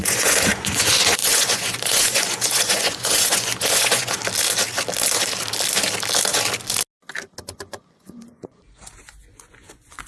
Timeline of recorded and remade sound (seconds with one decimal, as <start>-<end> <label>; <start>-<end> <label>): 0.0-4.2 remade; 4.2-7.4 recorded; 7.4-10.1 remade